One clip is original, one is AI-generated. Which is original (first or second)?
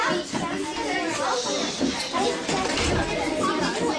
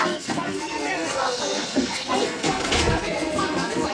first